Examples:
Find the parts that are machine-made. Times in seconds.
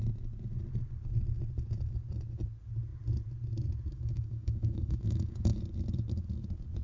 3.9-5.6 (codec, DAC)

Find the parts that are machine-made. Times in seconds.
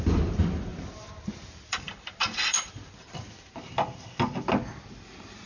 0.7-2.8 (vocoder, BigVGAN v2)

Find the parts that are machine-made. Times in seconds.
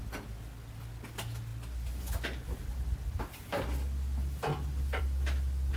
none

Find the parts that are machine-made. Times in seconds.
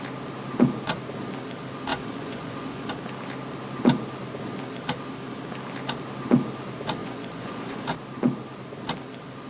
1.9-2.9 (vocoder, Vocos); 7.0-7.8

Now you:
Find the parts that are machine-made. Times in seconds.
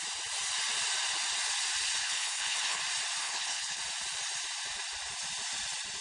2.0-2.8 (codec, HILCodec); 3.2-3.8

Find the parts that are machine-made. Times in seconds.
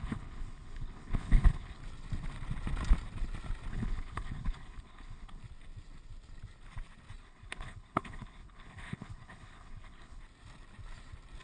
0.0-1.8 (codec, HILCodec); 3.7-5.4; 7.2-10.2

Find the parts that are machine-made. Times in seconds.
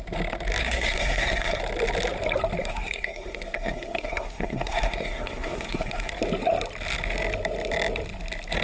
0.6-1.6 (codec, SNAC); 2.6-6.1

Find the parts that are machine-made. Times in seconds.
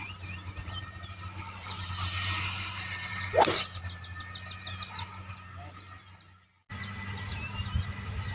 0.0-3.8 (vocoder, BigVGAN v2); 6.7-7.4